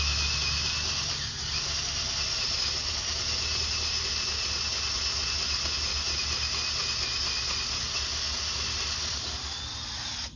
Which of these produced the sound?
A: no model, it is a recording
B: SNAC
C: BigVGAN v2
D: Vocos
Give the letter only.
A